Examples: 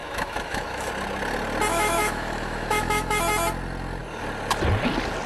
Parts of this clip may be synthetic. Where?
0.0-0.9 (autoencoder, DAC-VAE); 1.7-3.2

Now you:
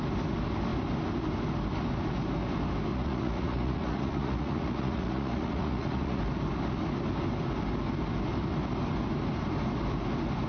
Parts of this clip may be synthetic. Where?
2.9-6.2 (vocoder, Vocos)

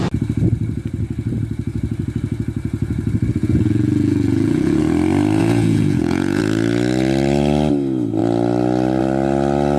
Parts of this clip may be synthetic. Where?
3.4-4.8 (vocoder, Vocos); 5.4-6.4